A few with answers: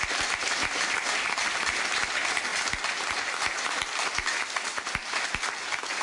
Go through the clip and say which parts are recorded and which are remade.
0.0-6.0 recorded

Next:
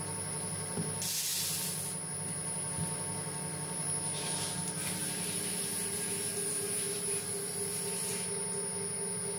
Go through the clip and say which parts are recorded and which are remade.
0.0-9.4 recorded